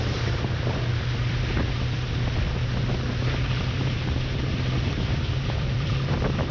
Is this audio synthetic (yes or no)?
yes